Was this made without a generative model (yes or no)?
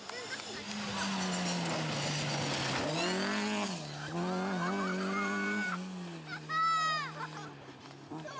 yes